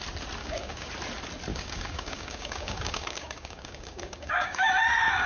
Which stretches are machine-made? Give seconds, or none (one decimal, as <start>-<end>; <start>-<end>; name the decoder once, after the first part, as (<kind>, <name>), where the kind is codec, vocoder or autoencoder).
0.4-0.9 (codec, DAC); 1.5-4.7